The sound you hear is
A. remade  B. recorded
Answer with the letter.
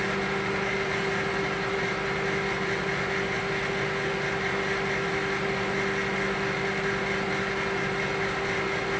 B